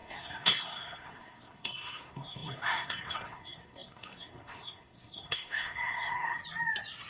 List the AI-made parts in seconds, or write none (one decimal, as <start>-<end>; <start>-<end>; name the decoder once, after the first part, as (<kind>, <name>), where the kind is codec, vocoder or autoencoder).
0.0-6.4 (codec, SNAC)